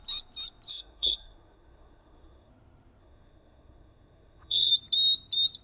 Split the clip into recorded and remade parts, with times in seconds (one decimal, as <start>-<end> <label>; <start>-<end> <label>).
0.0-0.7 recorded; 0.7-2.5 remade; 2.5-3.0 recorded; 3.0-4.7 remade; 4.7-5.6 recorded